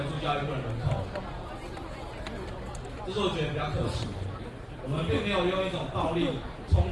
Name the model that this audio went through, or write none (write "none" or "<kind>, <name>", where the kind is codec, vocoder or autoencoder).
none